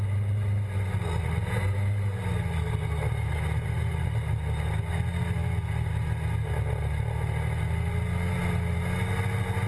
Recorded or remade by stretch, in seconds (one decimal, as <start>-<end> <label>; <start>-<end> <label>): 0.0-9.7 recorded